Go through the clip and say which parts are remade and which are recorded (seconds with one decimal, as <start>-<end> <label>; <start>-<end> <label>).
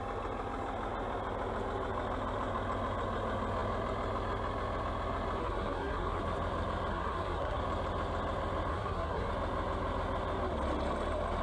0.0-5.4 recorded; 5.4-6.2 remade; 6.2-6.9 recorded; 6.9-7.6 remade; 7.6-8.7 recorded; 8.7-9.3 remade; 9.3-11.4 recorded